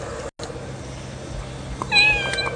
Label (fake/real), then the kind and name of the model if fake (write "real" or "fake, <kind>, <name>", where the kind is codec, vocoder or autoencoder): real